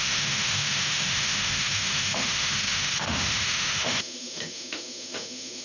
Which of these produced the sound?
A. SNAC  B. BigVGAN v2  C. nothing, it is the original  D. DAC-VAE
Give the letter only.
D